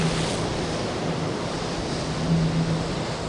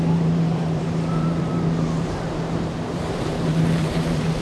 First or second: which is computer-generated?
second